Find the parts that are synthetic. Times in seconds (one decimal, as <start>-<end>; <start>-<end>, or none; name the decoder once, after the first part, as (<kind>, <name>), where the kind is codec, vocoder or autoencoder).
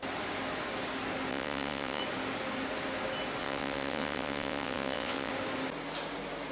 1.3-2.0 (vocoder, WaveNeXt); 3.4-5.3